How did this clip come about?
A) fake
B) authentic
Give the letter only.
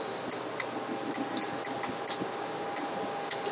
B